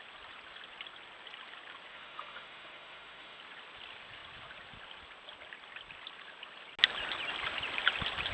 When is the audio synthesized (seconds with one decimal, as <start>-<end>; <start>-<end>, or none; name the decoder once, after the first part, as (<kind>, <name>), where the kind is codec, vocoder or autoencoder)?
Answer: 1.9-3.4 (autoencoder, DAC-VAE)